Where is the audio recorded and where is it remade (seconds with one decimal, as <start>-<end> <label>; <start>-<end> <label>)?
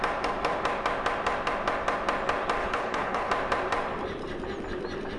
0.0-2.6 recorded; 2.6-3.3 remade; 3.3-5.2 recorded